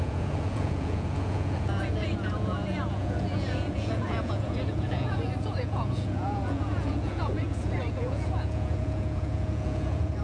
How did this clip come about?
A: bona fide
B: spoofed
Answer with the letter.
B